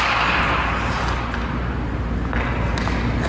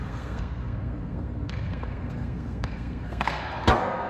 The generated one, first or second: second